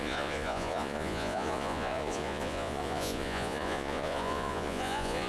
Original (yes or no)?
no